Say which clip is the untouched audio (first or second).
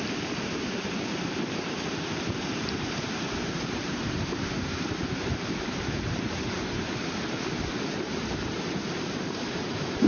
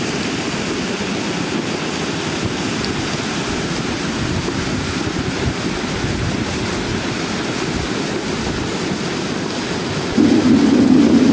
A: second